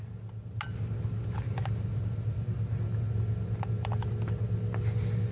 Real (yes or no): yes